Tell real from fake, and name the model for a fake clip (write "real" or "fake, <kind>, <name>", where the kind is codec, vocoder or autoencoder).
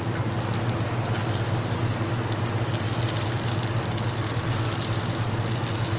real